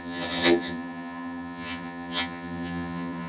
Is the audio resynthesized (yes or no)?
yes